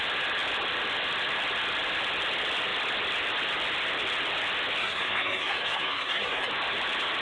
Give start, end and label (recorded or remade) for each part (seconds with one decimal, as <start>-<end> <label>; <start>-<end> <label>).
0.0-4.8 recorded; 4.8-6.5 remade; 6.5-7.2 recorded